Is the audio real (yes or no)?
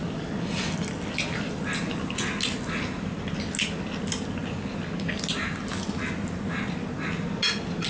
yes